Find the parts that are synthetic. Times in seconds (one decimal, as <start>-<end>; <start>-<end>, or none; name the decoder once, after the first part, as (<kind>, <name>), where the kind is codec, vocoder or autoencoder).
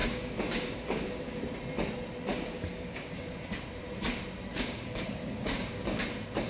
0.0-1.4 (codec, DAC); 2.3-3.4; 4.5-6.0